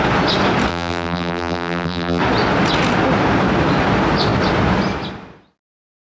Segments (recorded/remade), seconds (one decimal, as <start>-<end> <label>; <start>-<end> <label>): 0.0-0.7 recorded; 0.7-2.2 remade; 2.2-6.2 recorded